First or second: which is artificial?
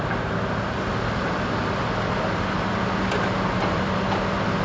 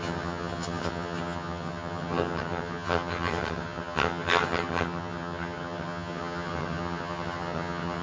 second